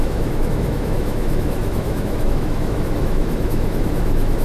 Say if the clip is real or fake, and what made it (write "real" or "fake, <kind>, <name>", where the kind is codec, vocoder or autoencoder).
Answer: fake, autoencoder, DAC-VAE